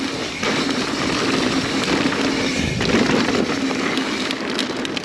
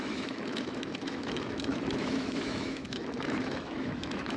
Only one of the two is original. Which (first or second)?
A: first